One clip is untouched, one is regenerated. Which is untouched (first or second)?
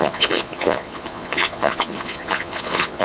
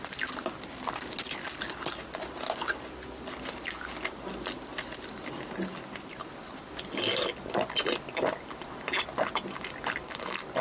second